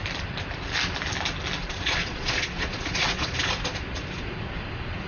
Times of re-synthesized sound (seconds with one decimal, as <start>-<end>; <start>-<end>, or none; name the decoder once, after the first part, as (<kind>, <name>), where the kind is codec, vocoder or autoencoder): 1.6-5.1 (vocoder, Vocos)